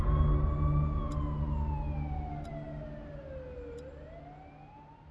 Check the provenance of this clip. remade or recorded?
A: recorded